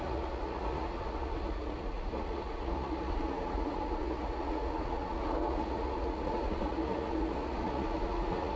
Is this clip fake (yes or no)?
yes